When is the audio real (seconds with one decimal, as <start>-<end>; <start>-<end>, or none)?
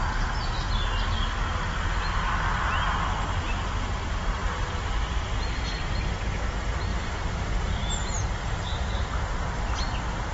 0.0-4.4; 5.6-6.9; 7.7-8.2; 9.9-10.3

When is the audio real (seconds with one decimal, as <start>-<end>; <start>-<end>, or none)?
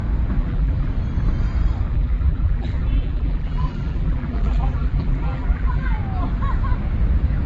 0.0-0.4; 0.9-1.9; 6.0-7.5